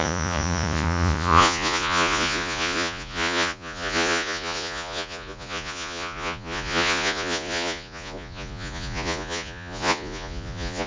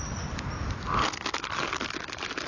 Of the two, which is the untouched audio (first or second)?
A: second